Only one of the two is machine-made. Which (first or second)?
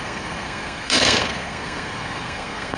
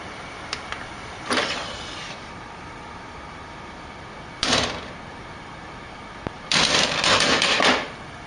first